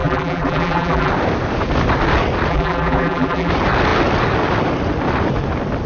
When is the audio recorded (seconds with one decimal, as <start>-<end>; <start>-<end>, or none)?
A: 1.1-2.5; 3.5-5.9